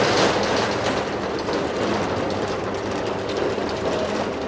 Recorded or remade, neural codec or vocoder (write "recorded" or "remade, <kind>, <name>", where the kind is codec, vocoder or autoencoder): recorded